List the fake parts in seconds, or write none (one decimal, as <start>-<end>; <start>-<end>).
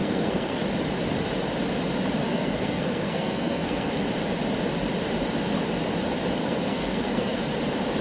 0.0-0.6; 2.2-3.9; 6.4-7.4